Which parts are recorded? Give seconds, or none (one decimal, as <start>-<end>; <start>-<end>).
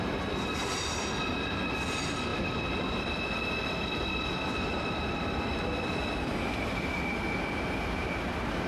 0.0-0.6; 1.6-2.3; 5.3-8.7